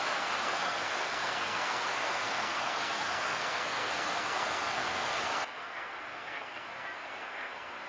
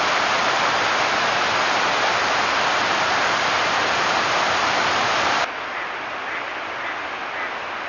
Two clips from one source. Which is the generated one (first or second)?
first